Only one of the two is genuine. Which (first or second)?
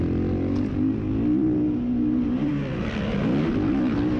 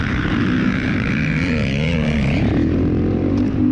first